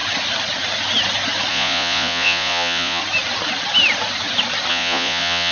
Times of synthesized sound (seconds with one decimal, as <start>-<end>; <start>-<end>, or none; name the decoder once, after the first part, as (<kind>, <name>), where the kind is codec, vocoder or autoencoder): 1.5-3.0 (vocoder, Vocos); 4.7-5.5